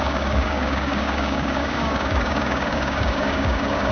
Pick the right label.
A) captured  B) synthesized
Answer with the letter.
B